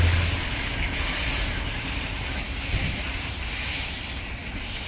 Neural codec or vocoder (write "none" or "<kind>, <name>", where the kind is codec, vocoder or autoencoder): none